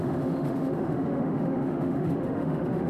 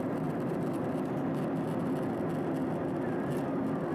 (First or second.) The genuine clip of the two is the second